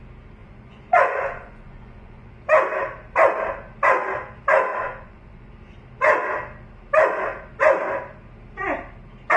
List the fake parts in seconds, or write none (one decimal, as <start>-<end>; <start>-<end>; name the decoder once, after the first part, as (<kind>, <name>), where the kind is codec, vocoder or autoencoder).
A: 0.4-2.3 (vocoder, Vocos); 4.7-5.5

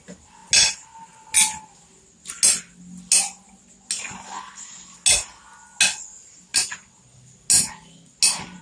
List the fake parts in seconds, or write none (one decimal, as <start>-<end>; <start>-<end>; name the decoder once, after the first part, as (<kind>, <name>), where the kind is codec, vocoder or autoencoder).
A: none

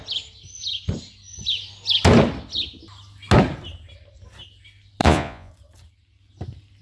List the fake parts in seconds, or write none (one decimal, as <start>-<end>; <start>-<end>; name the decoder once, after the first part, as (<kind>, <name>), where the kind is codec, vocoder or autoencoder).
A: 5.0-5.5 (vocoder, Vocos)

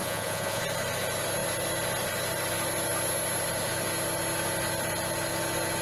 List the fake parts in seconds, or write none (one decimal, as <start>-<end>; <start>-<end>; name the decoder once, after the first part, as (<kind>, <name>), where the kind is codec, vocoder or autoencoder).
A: 0.0-0.6 (vocoder, Vocos)

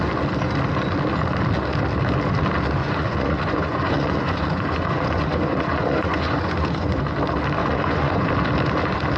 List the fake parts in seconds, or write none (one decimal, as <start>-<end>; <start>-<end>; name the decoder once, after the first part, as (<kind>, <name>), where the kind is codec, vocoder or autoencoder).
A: 2.8-7.0 (vocoder, Vocos); 7.6-8.3